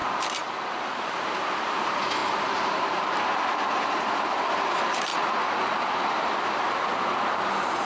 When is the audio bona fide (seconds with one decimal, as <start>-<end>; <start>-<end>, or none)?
5.1-6.7